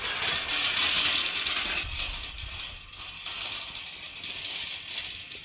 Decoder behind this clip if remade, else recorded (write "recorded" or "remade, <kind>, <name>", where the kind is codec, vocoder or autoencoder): recorded